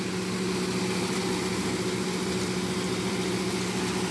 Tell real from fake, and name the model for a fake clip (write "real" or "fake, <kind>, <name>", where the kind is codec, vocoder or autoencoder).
real